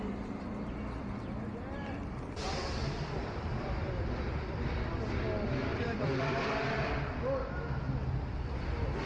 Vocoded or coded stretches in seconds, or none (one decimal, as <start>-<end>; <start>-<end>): 3.2-4.0; 5.7-7.0